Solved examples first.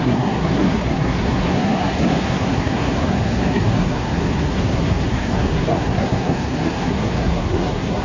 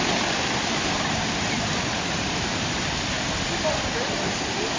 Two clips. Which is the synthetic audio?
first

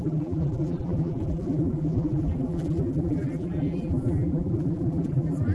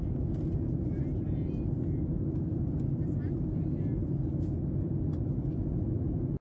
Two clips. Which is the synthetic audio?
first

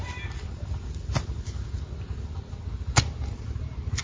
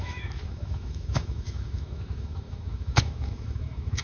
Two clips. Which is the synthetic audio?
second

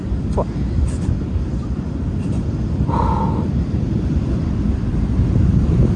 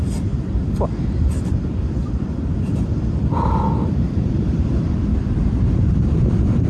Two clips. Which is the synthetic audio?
second